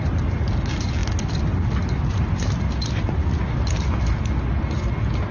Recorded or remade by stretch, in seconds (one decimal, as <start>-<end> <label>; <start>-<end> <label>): 0.0-5.3 recorded